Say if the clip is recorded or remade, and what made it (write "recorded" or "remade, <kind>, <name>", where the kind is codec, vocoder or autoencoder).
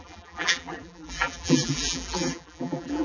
remade, vocoder, BigVGAN v2